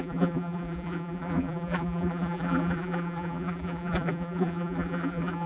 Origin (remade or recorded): remade